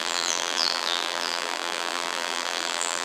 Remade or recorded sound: remade